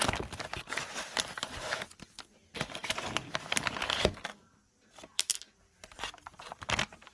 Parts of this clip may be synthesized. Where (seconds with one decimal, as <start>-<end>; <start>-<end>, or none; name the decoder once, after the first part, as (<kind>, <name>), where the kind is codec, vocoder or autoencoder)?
0.0-1.7 (vocoder, BigVGAN v2); 2.8-7.1